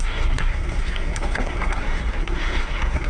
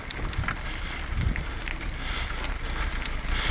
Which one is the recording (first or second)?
second